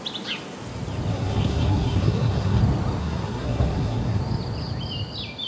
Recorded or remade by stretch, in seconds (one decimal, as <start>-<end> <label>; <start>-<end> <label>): 0.0-1.1 recorded; 1.1-2.6 remade; 2.6-3.0 recorded; 3.0-4.2 remade; 4.2-5.5 recorded